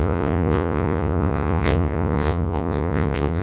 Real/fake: fake